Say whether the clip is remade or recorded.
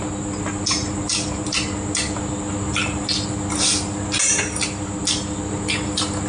recorded